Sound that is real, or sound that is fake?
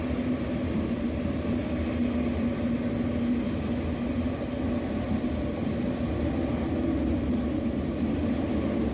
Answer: real